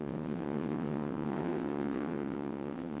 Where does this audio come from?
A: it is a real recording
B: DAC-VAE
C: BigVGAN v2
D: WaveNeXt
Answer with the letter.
D